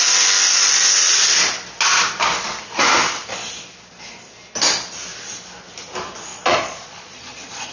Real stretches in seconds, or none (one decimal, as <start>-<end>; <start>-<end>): 0.0-6.3